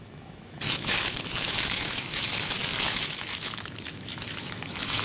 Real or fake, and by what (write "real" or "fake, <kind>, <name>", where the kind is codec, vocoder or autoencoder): fake, autoencoder, DAC-VAE